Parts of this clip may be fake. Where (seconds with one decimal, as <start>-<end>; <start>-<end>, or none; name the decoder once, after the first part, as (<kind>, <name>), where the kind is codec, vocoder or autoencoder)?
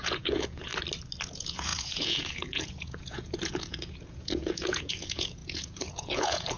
0.0-0.7 (vocoder, Vocos); 1.2-6.6